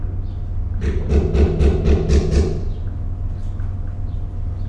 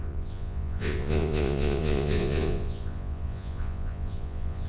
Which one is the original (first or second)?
first